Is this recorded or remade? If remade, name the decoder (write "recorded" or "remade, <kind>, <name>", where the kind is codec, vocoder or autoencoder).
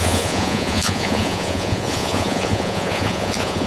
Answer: remade, vocoder, Vocos